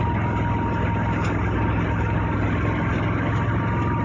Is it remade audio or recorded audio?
recorded